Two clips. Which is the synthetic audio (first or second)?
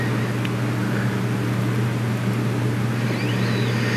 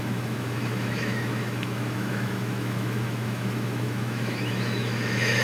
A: second